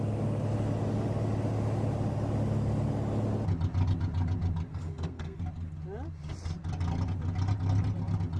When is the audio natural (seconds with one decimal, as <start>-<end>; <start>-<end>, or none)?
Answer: 0.0-4.7; 5.4-8.4